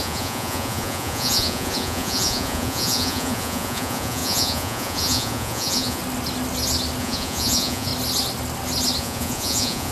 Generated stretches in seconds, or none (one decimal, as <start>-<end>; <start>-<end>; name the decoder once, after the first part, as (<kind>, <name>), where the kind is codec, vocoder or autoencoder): 0.0-6.0 (vocoder, Vocos); 7.0-7.9; 9.0-9.9